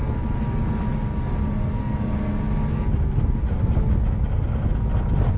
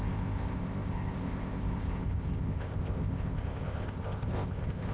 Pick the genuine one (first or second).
first